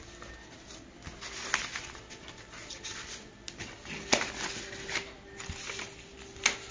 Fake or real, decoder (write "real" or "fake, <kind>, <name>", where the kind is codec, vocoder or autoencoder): real